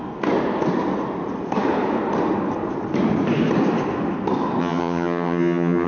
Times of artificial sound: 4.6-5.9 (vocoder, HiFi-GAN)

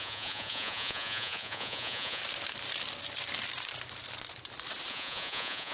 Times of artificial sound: 0.0-2.2 (vocoder, Vocos); 4.9-5.7

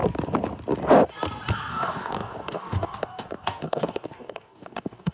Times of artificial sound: 1.7-5.1 (codec, DAC)

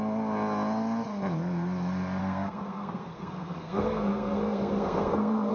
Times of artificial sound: 2.2-5.5 (codec, SNAC)